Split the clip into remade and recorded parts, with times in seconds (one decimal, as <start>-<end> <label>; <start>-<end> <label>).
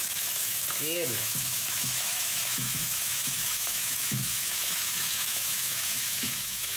0.0-6.8 remade